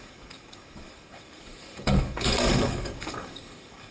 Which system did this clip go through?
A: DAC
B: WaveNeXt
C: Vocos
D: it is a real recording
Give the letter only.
A